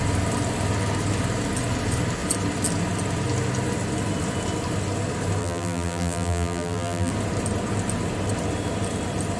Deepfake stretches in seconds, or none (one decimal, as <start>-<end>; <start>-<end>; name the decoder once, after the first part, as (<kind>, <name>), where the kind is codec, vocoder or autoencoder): 5.4-7.1 (vocoder, BigVGAN v2)